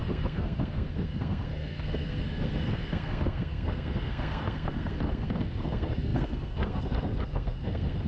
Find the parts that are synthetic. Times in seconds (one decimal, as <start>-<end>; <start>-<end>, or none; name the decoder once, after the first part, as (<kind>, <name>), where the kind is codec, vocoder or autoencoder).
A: 0.0-8.1 (codec, SNAC)